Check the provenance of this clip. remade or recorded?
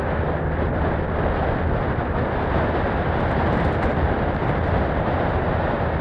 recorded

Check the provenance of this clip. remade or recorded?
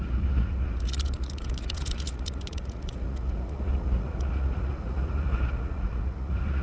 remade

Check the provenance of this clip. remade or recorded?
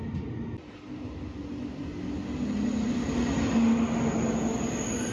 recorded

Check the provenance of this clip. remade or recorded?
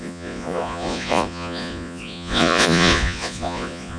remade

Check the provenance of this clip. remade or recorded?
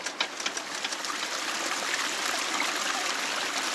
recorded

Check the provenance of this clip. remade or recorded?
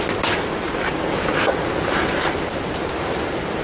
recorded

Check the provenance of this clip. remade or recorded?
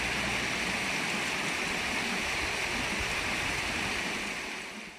recorded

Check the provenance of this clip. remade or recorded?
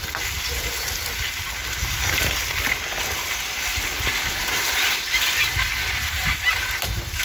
recorded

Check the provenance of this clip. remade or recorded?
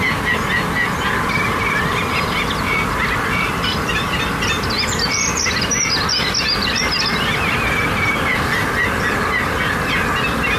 recorded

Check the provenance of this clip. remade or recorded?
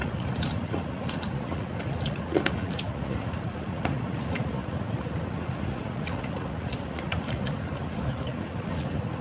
remade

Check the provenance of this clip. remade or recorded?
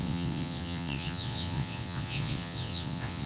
remade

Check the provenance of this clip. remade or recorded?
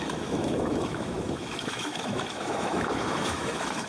remade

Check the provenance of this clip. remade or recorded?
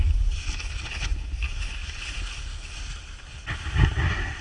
recorded